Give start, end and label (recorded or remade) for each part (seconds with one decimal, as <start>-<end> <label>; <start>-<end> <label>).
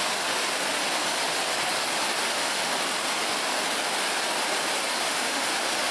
0.0-0.4 remade; 0.4-2.2 recorded; 2.2-2.7 remade; 2.7-5.0 recorded; 5.0-5.9 remade